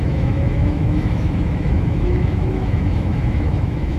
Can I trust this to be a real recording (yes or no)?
no